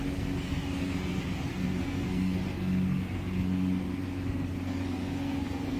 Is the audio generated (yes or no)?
yes